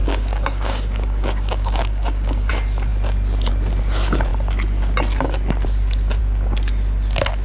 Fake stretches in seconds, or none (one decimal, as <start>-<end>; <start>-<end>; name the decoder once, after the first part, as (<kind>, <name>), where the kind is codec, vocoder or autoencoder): 0.0-2.5 (codec, DAC)